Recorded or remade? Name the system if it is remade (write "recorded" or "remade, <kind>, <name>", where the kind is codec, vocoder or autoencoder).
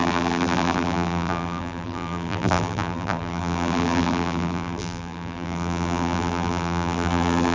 remade, vocoder, BigVGAN v2